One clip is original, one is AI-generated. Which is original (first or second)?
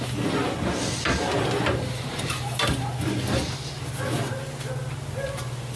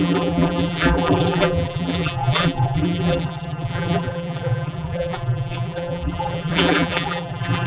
first